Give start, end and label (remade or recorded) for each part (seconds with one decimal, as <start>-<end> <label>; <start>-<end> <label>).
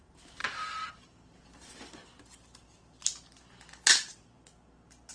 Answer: 0.0-2.0 remade; 2.0-5.1 recorded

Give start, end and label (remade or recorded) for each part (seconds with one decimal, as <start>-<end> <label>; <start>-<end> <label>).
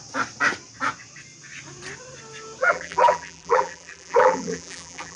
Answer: 0.0-2.6 recorded; 2.6-5.2 remade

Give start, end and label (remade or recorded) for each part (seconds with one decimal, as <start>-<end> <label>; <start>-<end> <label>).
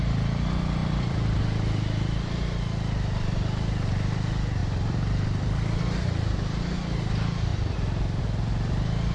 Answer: 0.0-0.8 recorded; 0.8-1.4 remade; 1.4-4.6 recorded; 4.6-5.8 remade; 5.8-9.1 recorded